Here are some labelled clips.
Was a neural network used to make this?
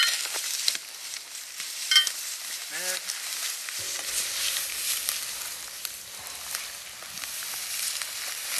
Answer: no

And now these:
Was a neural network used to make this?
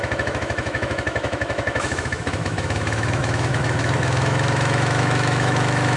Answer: yes